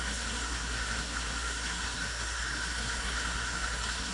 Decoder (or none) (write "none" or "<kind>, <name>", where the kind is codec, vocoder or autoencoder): codec, SNAC